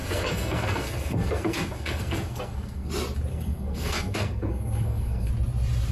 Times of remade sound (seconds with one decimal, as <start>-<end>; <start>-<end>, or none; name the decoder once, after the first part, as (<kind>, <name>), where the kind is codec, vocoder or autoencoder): 0.0-2.9 (codec, SNAC); 3.3-5.3